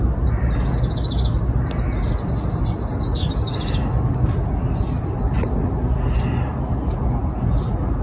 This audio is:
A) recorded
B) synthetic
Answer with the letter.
A